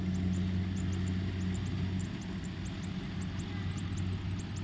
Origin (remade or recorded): recorded